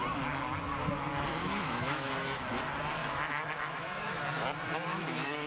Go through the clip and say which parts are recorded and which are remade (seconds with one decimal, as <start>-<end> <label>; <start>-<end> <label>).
0.0-1.4 recorded; 1.4-2.1 remade; 2.1-3.0 recorded; 3.0-4.2 remade; 4.2-4.9 recorded; 4.9-5.5 remade